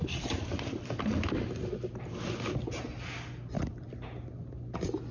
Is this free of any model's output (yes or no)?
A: yes